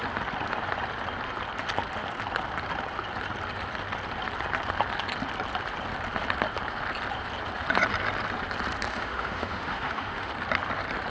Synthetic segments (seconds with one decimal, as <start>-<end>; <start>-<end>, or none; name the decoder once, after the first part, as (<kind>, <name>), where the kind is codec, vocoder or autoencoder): 8.9-10.3 (autoencoder, DAC-VAE)